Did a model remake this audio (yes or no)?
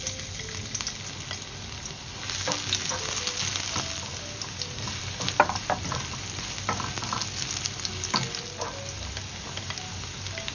no